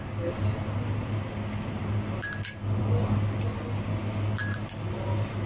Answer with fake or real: real